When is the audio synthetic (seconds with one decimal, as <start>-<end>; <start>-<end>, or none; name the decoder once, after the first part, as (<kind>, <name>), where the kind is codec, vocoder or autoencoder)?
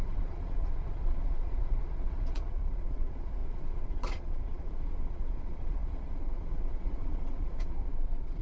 0.0-8.4 (vocoder, Vocos)